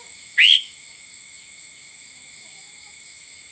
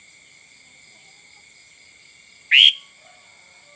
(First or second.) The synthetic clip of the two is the first